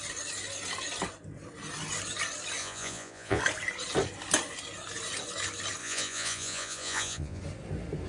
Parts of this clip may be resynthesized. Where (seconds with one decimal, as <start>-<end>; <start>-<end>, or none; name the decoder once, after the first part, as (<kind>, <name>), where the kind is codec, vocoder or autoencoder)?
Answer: 2.6-3.4 (vocoder, Vocos); 5.8-7.4